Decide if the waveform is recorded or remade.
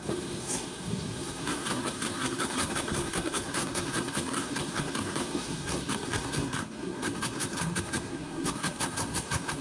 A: remade